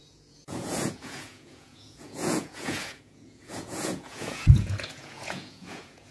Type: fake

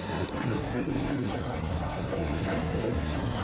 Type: fake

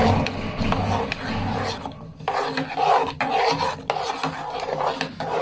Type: real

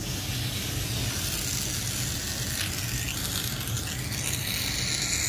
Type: real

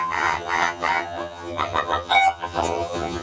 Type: fake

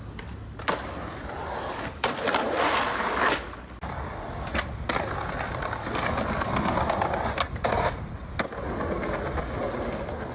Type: real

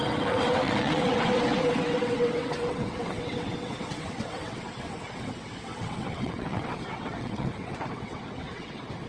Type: fake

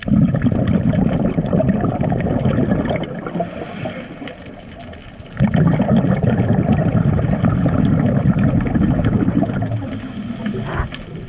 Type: real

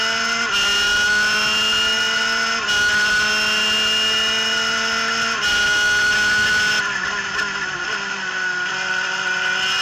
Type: real